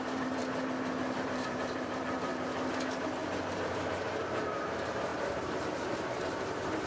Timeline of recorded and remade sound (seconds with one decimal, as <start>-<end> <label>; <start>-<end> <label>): 0.0-0.4 remade; 0.4-1.2 recorded; 1.2-2.3 remade; 2.3-3.5 recorded; 3.5-6.9 remade